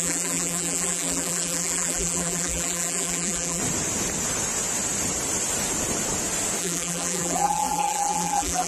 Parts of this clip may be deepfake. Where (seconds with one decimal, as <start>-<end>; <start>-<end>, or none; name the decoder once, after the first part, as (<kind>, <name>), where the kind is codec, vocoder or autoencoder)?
0.0-3.6 (vocoder, BigVGAN v2); 6.6-8.7